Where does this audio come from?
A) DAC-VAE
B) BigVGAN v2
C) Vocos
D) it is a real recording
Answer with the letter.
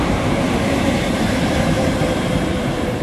B